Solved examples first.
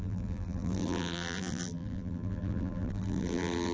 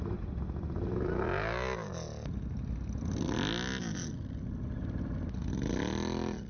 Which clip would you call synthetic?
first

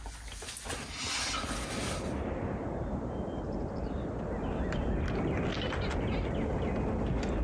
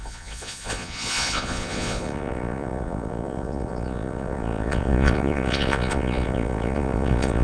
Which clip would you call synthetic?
second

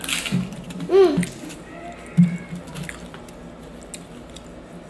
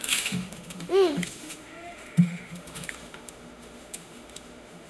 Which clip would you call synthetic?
second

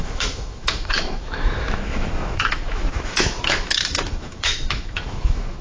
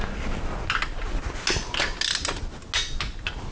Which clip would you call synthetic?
first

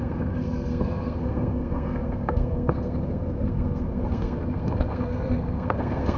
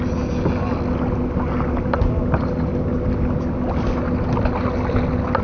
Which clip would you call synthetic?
first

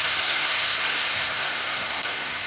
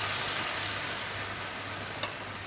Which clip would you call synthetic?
first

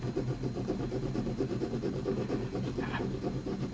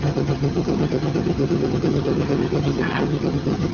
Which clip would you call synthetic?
second